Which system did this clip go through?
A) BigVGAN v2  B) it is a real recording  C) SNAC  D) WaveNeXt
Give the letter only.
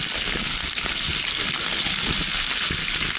B